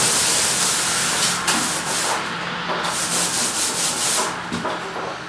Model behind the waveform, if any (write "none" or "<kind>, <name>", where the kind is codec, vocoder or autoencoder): none